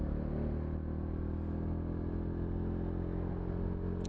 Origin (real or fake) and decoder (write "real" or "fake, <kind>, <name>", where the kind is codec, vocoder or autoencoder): real